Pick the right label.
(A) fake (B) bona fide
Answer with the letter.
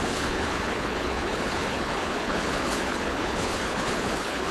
A